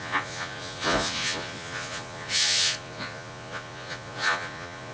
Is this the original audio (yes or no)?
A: no